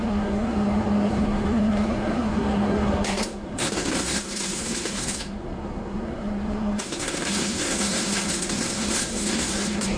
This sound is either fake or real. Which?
fake